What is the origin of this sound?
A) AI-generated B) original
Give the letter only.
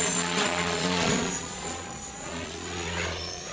A